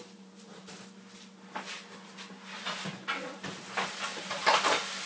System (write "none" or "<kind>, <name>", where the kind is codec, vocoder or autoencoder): none